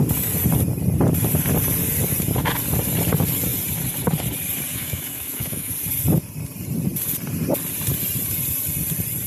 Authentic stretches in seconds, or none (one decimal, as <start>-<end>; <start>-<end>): 0.0-4.7; 5.7-9.3